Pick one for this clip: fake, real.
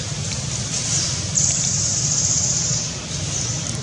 real